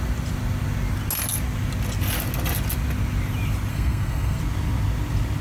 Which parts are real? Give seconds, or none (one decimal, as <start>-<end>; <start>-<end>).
0.0-3.7; 4.4-5.4